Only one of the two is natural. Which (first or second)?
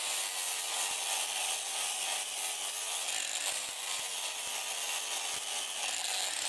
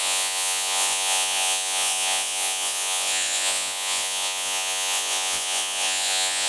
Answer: first